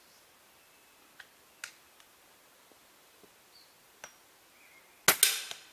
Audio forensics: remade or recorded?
recorded